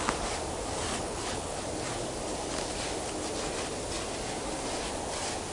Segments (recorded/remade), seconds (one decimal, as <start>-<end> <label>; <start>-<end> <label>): 0.0-0.9 recorded; 0.9-1.6 remade; 1.6-5.5 recorded